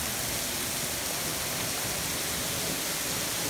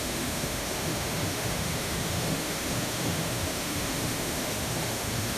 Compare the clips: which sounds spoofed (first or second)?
second